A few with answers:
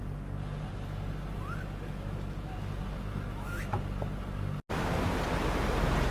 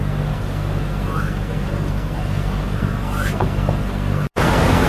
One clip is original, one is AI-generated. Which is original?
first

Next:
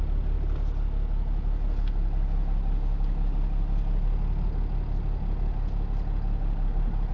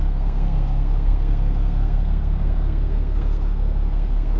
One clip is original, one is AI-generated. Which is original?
first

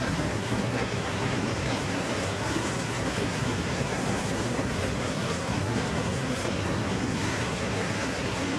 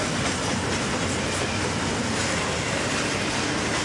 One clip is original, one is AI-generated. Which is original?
second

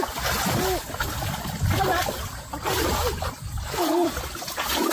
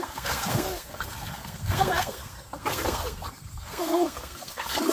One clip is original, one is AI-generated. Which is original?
first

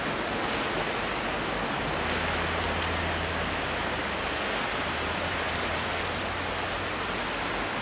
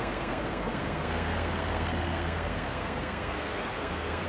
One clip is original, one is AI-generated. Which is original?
first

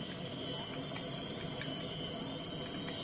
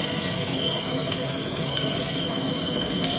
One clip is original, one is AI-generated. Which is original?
first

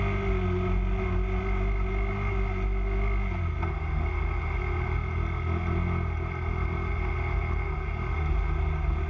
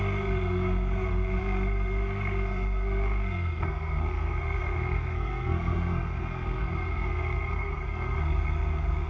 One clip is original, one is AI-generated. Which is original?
first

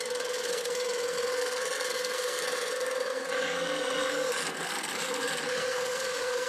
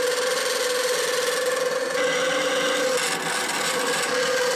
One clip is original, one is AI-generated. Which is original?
second